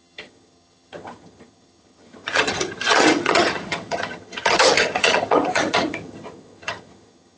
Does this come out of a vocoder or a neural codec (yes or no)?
yes